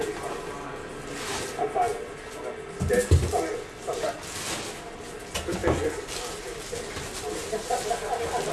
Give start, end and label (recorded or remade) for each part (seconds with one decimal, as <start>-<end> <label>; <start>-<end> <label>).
0.0-8.5 recorded